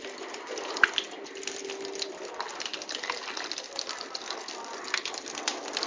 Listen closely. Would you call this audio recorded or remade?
recorded